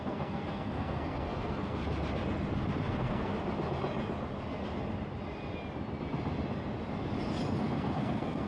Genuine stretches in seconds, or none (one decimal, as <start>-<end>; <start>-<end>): 1.8-2.9; 3.3-7.6